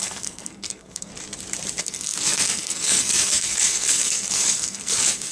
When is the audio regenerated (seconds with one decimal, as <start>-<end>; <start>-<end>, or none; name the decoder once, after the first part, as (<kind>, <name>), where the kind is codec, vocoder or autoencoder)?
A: 0.0-1.1 (codec, SNAC); 1.8-5.3